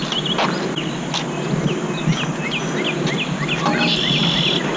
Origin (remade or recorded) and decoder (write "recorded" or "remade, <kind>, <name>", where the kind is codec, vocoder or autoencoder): recorded